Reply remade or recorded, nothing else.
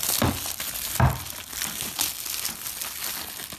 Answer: recorded